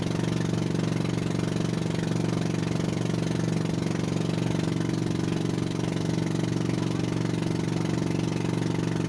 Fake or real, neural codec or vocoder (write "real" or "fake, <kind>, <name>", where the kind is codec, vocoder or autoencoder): real